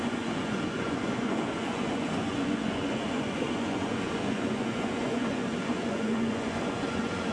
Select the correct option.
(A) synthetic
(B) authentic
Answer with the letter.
A